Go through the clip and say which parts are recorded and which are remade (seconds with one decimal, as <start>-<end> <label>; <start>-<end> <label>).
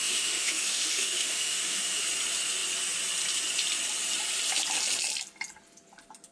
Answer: 0.0-2.0 remade; 2.0-6.3 recorded